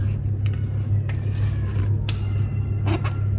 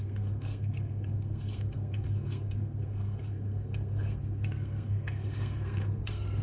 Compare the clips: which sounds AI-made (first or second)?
second